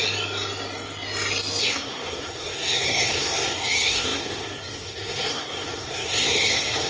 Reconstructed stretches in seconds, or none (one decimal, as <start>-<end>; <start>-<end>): 1.6-6.9